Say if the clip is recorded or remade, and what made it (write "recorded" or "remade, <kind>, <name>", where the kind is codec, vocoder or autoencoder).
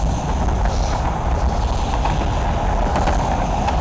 recorded